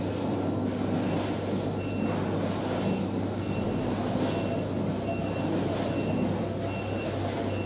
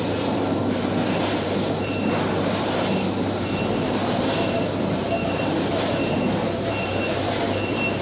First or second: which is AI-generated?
second